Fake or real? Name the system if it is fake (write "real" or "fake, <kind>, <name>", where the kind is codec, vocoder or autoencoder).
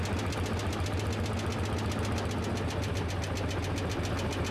real